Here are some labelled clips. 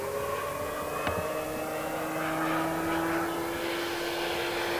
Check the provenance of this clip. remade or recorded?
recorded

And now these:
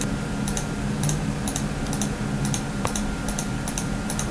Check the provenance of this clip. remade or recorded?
remade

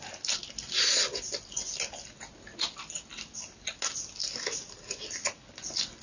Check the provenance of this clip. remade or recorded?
recorded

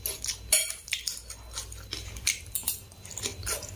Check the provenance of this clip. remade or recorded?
recorded